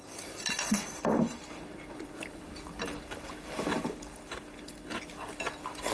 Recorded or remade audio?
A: recorded